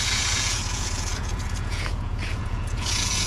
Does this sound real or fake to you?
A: fake